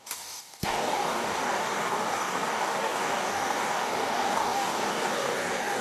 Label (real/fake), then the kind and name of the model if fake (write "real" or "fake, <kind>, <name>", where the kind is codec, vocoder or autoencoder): fake, codec, DAC